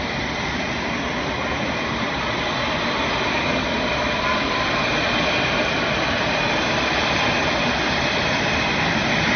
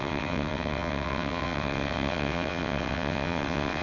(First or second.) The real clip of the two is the first